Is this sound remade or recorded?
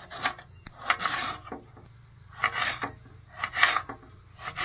recorded